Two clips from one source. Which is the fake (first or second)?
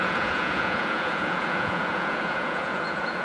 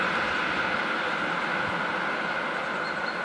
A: first